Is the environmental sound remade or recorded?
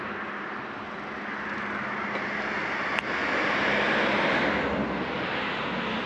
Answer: recorded